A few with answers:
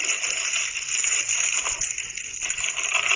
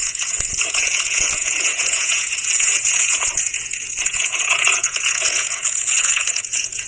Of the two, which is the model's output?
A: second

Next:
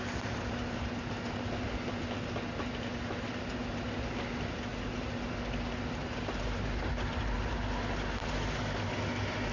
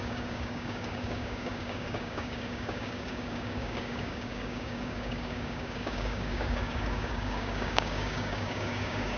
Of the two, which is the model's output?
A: second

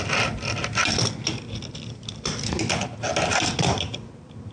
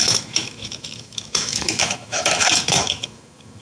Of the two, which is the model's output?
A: second